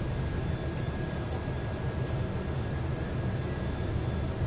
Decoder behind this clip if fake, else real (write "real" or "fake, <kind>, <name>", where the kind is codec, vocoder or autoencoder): real